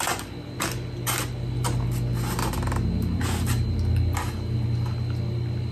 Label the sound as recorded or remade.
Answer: recorded